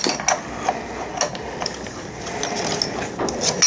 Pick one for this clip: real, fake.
real